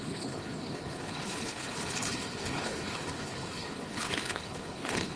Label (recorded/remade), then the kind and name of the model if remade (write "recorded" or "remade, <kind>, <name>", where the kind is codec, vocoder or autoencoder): remade, codec, HILCodec